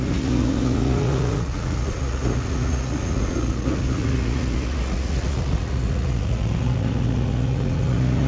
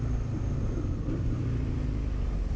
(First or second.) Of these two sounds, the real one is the second